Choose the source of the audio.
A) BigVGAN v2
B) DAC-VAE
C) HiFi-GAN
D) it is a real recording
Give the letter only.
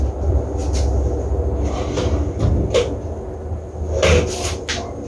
D